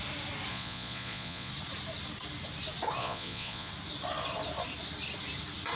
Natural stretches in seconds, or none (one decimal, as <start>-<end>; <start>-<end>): 0.0-0.5; 1.5-3.0; 3.7-5.8